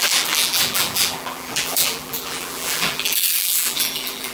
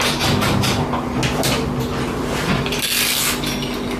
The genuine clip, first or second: second